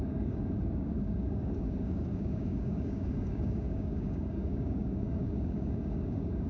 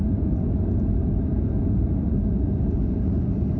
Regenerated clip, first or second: first